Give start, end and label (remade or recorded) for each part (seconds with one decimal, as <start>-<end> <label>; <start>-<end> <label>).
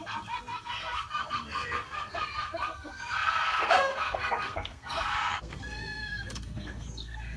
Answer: 0.0-7.4 remade